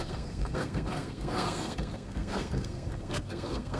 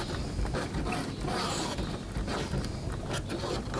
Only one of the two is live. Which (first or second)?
second